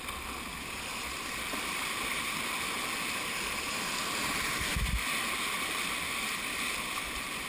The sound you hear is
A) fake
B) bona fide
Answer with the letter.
A